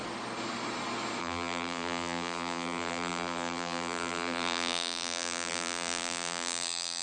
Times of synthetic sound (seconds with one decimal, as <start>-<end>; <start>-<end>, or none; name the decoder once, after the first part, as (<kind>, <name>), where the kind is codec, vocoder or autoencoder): 1.2-7.0 (vocoder, BigVGAN v2)